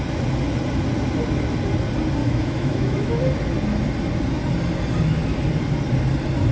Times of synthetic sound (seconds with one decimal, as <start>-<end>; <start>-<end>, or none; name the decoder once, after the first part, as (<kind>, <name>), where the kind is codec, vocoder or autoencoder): 2.2-3.2 (autoencoder, DAC-VAE)